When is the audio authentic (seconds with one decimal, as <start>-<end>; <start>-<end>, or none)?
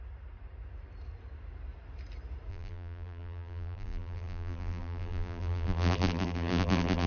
0.0-2.5